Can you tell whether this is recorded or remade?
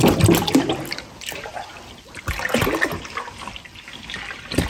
recorded